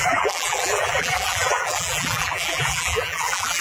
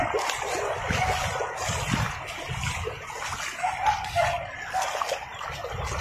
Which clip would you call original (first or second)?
second